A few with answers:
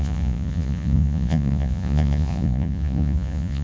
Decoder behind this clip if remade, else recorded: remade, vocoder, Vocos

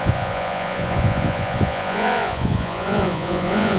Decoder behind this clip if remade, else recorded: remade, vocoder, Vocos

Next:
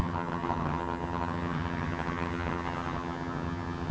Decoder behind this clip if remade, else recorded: remade, vocoder, HiFi-GAN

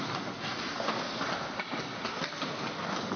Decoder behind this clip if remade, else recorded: recorded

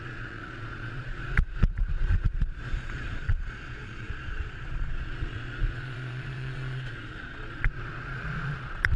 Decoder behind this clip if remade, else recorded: remade, vocoder, Vocos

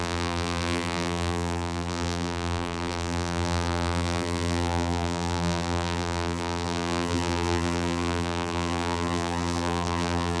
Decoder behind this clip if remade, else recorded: remade, vocoder, BigVGAN v2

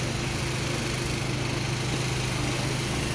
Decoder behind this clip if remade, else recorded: recorded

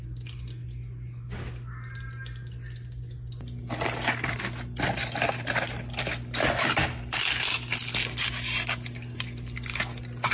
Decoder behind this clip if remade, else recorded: recorded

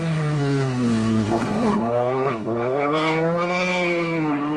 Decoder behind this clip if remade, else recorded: remade, codec, SNAC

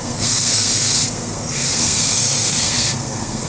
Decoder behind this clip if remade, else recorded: remade, codec, SNAC